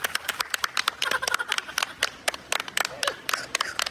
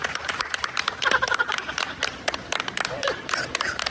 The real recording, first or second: first